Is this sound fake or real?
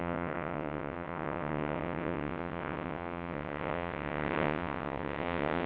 fake